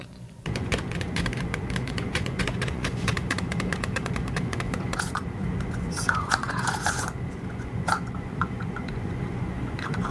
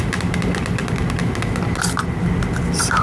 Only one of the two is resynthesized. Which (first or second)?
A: first